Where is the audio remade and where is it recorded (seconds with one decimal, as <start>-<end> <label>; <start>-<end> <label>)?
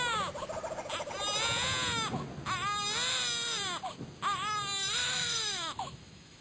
0.0-5.0 recorded; 5.0-6.4 remade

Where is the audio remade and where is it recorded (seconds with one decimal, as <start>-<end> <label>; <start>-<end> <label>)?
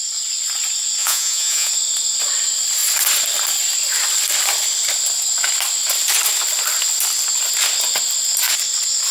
0.0-1.0 recorded; 1.0-1.7 remade; 1.7-9.1 recorded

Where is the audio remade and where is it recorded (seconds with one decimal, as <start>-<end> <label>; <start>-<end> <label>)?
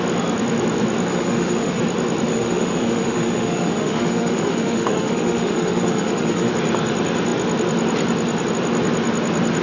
0.0-1.1 recorded; 1.1-1.8 remade; 1.8-2.3 recorded; 2.3-6.5 remade; 6.5-9.6 recorded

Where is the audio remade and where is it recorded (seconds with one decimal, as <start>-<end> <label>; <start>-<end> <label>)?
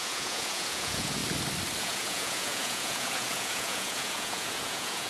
0.0-1.2 remade; 1.2-1.8 recorded; 1.8-5.1 remade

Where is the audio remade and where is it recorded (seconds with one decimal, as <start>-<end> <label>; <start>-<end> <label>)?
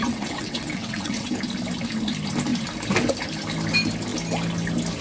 0.0-1.3 remade; 1.3-5.0 recorded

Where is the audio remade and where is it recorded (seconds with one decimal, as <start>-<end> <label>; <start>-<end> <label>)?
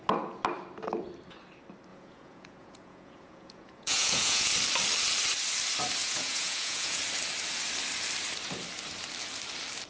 0.0-1.9 recorded; 1.9-4.5 remade; 4.5-6.0 recorded; 6.0-7.0 remade; 7.0-9.9 recorded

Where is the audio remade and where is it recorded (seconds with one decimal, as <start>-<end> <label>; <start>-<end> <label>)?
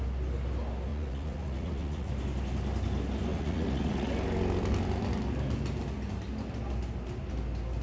0.0-0.9 recorded; 0.9-2.1 remade; 2.1-3.3 recorded; 3.3-4.1 remade; 4.1-7.8 recorded